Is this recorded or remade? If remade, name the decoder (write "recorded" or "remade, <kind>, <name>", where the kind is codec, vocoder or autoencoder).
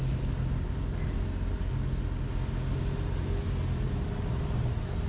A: recorded